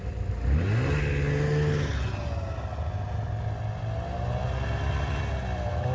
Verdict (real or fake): real